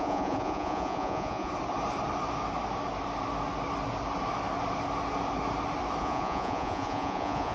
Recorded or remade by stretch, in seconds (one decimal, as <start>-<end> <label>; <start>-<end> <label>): 0.0-1.5 remade; 1.5-6.0 recorded; 6.0-7.5 remade